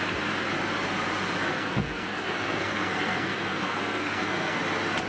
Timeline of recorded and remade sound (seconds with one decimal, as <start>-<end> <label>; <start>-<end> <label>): 0.0-1.5 recorded; 1.5-4.6 remade; 4.6-5.1 recorded